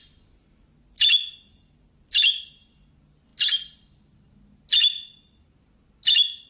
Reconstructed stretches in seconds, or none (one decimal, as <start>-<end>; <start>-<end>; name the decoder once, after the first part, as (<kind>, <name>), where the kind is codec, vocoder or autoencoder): none